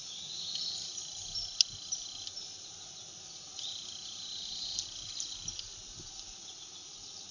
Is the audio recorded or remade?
recorded